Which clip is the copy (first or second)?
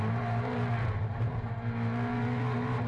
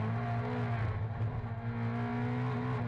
first